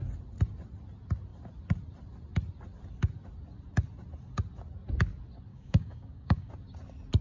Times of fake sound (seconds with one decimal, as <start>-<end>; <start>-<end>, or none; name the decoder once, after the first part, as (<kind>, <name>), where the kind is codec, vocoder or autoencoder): 5.5-6.5 (codec, DAC)